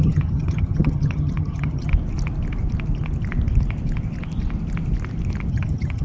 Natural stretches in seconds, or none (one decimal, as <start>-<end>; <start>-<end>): 1.9-5.5